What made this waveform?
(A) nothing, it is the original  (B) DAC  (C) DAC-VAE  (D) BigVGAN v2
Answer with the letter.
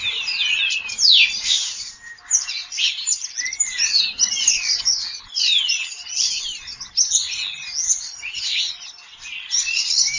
A